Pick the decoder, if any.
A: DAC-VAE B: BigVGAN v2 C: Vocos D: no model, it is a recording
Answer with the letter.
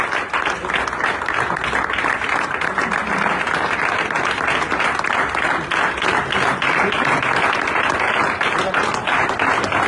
D